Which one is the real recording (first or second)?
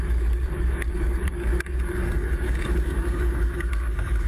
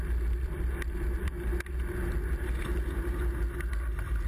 second